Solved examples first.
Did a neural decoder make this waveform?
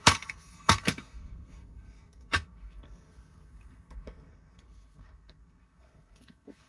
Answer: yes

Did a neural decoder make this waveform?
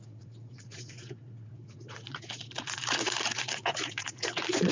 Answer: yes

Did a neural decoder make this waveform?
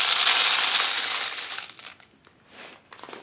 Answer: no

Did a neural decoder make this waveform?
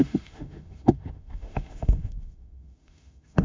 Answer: yes